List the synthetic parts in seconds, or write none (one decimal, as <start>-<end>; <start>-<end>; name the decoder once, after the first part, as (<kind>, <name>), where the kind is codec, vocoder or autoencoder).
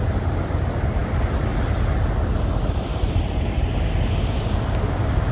none